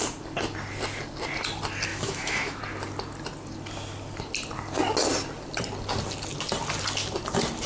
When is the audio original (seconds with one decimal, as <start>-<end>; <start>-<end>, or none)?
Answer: 0.0-1.9; 2.6-7.7